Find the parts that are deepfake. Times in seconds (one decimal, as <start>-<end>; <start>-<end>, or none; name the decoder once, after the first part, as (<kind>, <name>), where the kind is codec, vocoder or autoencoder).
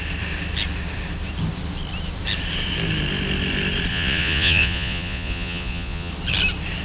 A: 3.9-6.1 (vocoder, Vocos)